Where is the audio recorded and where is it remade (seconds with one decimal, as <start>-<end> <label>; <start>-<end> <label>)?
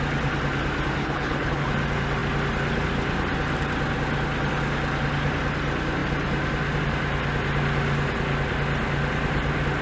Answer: 0.0-1.0 recorded; 1.0-1.7 remade; 1.7-9.8 recorded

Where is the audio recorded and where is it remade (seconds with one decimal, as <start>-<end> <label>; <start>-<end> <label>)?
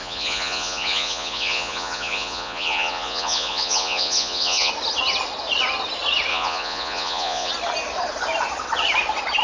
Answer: 0.0-4.7 remade; 4.7-6.3 recorded; 6.3-7.5 remade; 7.5-9.4 recorded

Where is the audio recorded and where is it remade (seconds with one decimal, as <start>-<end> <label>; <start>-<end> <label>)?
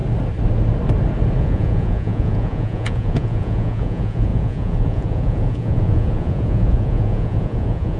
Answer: 0.0-1.4 recorded; 1.4-8.0 remade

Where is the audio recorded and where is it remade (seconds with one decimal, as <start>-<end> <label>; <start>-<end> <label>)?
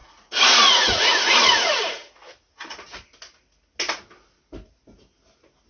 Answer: 0.0-2.0 remade; 2.0-5.7 recorded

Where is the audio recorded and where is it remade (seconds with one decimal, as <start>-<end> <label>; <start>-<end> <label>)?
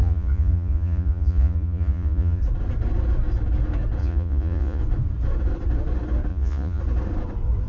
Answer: 0.0-2.4 remade; 2.4-4.0 recorded; 4.0-4.8 remade; 4.8-6.3 recorded; 6.3-6.8 remade; 6.8-7.7 recorded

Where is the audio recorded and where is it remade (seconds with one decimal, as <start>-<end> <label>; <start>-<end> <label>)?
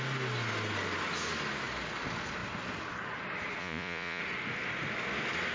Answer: 0.0-3.6 recorded; 3.6-4.2 remade; 4.2-5.5 recorded